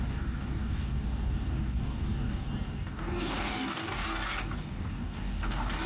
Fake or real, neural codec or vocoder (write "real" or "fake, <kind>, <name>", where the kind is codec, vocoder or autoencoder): fake, codec, DAC